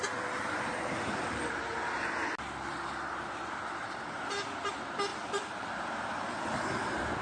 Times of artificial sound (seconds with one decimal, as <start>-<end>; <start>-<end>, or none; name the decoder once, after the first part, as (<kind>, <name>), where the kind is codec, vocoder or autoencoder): 5.1-5.7 (vocoder, BigVGAN v2)